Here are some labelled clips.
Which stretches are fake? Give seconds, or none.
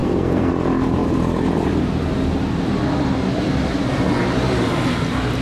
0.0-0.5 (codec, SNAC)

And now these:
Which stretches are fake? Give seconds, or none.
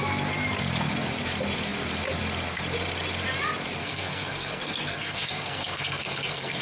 3.8-6.6 (codec, SNAC)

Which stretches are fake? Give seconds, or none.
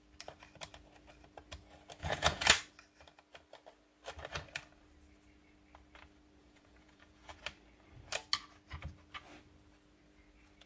2.0-2.5 (vocoder, Vocos); 6.4-7.4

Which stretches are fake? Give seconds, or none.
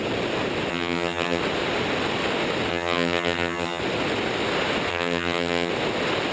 0.7-1.4 (vocoder, HiFi-GAN); 2.7-3.8; 4.9-5.7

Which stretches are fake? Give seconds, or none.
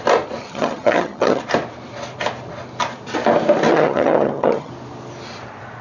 0.4-1.4 (vocoder, HiFi-GAN); 3.7-4.7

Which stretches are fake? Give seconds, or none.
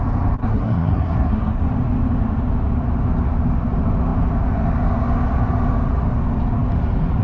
0.4-1.6 (codec, SNAC)